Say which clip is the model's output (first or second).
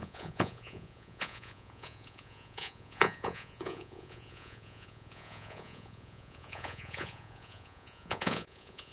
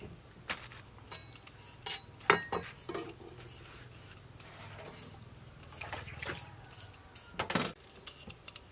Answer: first